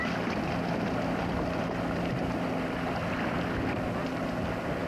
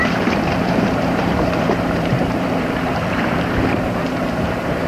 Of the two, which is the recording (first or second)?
first